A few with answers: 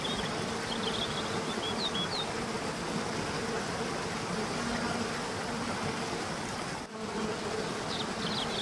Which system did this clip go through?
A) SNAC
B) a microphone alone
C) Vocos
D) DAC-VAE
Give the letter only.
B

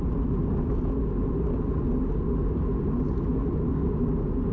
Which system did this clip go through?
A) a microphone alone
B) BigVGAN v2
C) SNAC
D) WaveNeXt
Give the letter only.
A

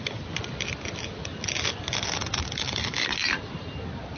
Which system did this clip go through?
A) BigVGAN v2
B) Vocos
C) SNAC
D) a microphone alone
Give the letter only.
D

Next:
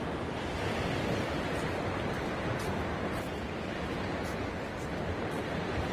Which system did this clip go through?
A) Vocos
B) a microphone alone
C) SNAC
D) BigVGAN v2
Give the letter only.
B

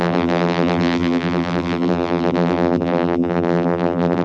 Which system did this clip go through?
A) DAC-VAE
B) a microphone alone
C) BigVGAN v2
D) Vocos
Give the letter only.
C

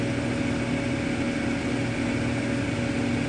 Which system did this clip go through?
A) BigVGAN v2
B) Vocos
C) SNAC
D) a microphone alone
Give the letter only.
D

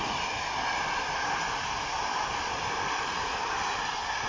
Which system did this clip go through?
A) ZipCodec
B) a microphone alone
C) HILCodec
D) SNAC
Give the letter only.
B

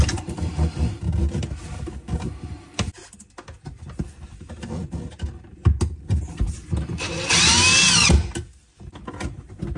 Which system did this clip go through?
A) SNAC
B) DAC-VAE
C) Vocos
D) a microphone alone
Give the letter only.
D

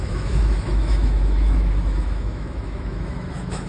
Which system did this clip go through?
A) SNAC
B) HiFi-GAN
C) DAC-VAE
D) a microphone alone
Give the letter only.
C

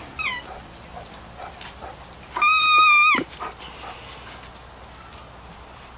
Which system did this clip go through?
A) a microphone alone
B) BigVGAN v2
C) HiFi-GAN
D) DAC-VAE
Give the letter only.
A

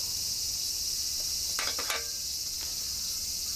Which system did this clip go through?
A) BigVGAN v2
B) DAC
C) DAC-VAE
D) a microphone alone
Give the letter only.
D